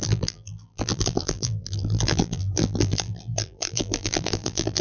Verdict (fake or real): fake